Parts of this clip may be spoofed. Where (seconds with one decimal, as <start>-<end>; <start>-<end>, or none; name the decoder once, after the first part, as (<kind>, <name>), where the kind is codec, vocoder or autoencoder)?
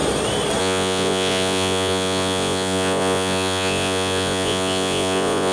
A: 0.6-5.5 (vocoder, Vocos)